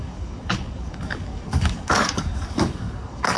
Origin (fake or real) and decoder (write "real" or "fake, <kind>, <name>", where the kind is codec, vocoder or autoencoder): fake, codec, DAC